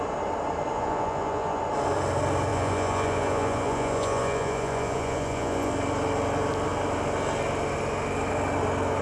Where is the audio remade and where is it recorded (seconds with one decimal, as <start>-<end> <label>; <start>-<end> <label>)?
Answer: 0.0-0.7 recorded; 0.7-1.6 remade; 1.6-2.5 recorded; 2.5-5.7 remade; 5.7-9.0 recorded